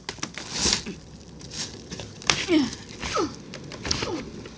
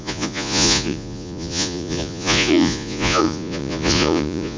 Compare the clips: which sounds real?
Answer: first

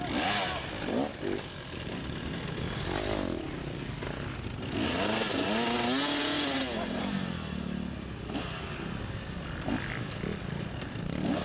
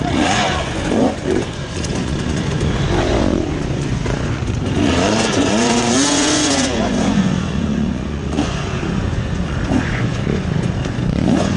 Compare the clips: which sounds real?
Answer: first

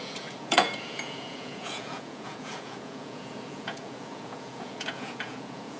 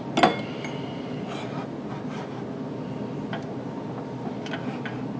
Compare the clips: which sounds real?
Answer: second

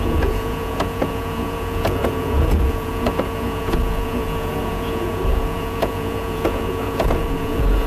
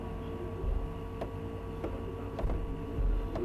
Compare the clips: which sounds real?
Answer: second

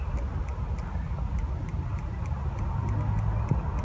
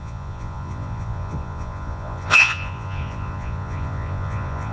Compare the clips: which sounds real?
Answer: first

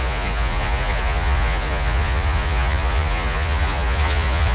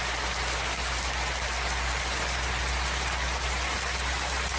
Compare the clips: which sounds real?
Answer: second